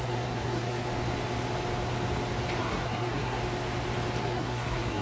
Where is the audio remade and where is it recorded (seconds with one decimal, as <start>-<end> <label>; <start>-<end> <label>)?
0.0-0.9 remade; 0.9-2.6 recorded; 2.6-3.4 remade; 3.4-4.2 recorded; 4.2-5.0 remade